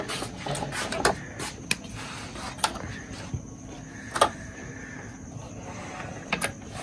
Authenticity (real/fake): real